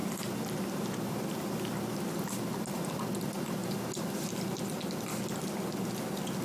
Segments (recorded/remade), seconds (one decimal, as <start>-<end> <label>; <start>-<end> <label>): 0.0-6.4 recorded